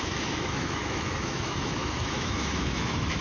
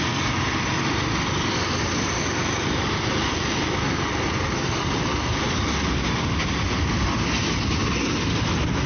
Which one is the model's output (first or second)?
first